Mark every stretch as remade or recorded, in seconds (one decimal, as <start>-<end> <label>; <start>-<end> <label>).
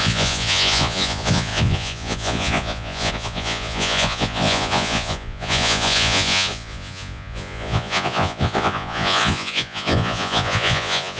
0.0-11.2 remade